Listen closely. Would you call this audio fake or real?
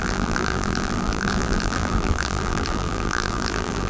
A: fake